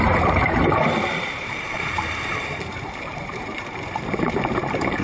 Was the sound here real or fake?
fake